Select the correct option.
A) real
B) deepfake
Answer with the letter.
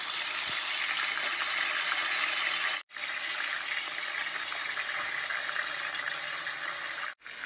A